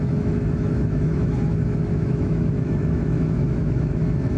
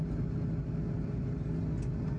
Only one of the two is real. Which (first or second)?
second